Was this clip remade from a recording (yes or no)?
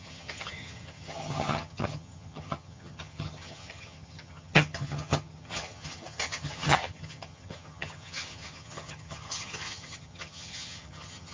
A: yes